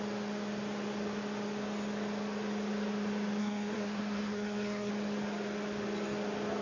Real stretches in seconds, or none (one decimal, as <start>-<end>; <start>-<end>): 0.0-3.4; 4.9-6.6